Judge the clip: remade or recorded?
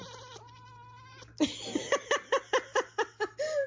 recorded